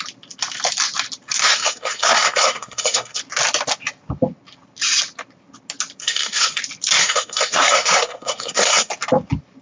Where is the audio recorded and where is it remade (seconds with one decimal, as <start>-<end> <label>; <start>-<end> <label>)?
0.0-1.4 recorded; 1.4-3.2 remade; 3.2-6.0 recorded; 6.0-6.6 remade; 6.6-7.0 recorded; 7.0-8.9 remade; 8.9-9.6 recorded